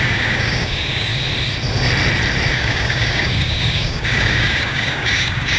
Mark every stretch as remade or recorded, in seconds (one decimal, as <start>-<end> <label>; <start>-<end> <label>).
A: 0.0-1.1 remade; 1.1-2.5 recorded; 2.5-5.6 remade

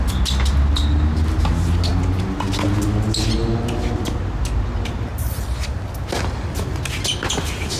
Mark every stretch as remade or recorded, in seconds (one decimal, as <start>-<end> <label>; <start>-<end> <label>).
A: 0.0-7.8 recorded

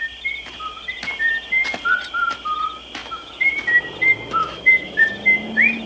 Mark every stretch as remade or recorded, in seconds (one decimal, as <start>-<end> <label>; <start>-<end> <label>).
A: 0.0-3.0 recorded; 3.0-3.5 remade; 3.5-4.4 recorded; 4.4-5.0 remade; 5.0-5.9 recorded

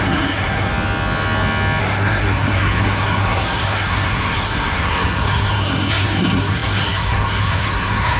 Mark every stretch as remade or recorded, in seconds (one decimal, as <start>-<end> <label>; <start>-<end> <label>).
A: 0.0-0.7 remade; 0.7-1.8 recorded; 1.8-8.2 remade

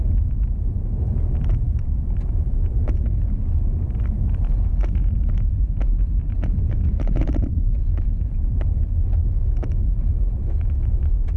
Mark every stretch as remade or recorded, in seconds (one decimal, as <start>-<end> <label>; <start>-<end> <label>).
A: 0.0-11.4 remade

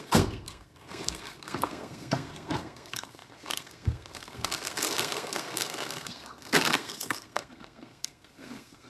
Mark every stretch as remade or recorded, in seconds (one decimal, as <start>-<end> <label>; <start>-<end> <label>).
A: 0.0-8.9 remade